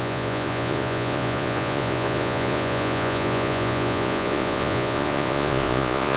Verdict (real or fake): fake